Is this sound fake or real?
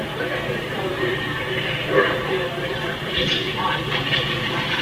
fake